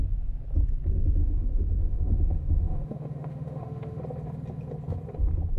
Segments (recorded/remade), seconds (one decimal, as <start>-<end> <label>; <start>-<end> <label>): 0.0-1.2 recorded; 1.2-4.0 remade; 4.0-5.6 recorded